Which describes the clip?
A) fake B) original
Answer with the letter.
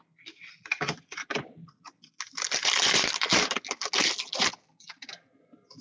B